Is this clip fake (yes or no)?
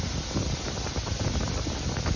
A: no